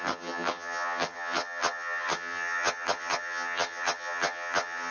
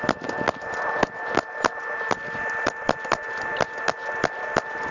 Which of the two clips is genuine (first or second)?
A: second